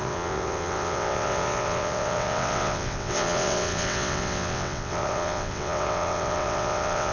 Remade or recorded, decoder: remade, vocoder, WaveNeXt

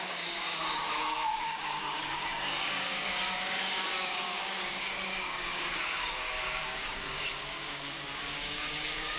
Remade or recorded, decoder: remade, codec, DAC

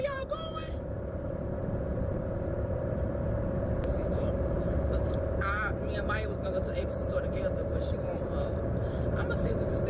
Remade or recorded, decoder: remade, vocoder, BigVGAN v2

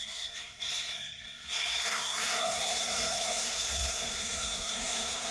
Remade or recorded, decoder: remade, codec, SNAC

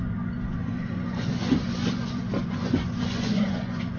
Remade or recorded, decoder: remade, vocoder, Vocos